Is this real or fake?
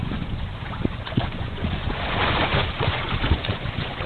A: fake